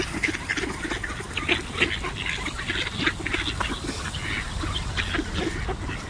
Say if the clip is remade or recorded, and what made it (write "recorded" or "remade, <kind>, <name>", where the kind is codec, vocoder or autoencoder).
recorded